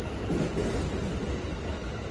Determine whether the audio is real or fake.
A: real